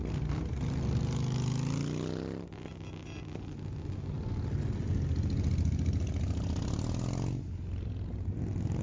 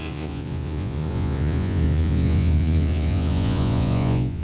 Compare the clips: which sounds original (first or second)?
first